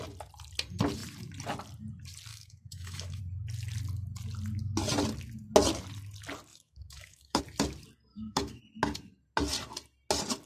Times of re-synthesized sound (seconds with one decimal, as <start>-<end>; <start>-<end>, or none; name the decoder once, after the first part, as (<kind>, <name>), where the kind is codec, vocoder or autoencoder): 2.3-3.2 (autoencoder, DAC-VAE); 6.5-7.4; 8.1-8.6